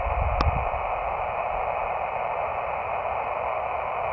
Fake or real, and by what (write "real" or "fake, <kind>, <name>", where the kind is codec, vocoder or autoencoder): real